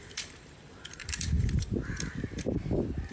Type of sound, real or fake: fake